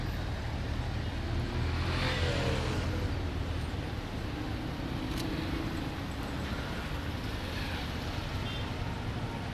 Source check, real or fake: real